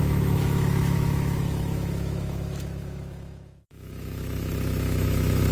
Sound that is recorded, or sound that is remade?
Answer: remade